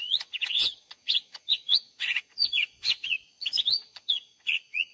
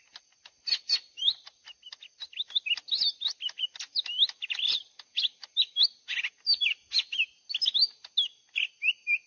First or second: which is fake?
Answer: first